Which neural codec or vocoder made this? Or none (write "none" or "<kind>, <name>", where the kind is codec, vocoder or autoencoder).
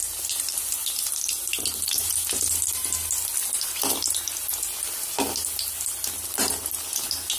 none